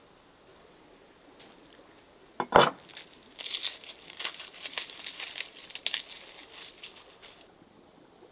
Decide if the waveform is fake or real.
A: real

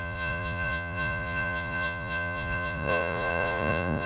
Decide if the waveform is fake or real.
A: fake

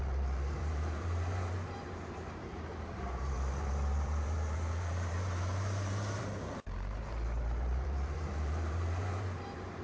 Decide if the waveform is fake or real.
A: fake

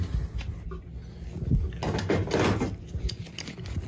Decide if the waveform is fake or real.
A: real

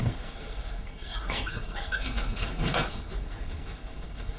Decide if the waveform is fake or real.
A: fake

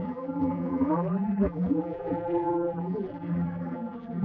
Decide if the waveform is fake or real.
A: fake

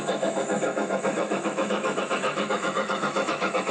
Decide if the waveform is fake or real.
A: fake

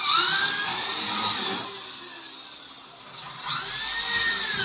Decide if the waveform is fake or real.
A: real